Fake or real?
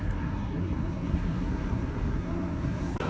fake